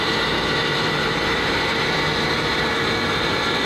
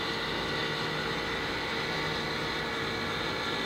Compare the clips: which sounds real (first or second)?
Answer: second